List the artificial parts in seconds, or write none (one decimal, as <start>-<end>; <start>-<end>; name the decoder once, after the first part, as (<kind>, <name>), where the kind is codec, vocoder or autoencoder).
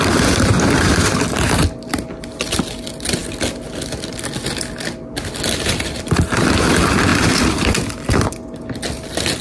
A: 7.1-8.2 (vocoder, BigVGAN v2)